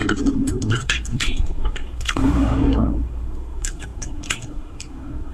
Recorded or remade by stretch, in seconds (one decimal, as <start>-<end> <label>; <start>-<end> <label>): 0.0-5.3 remade